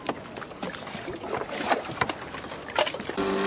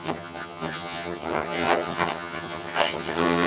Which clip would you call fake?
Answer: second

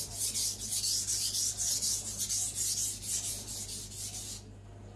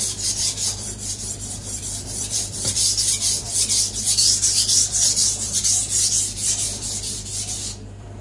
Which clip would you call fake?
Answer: second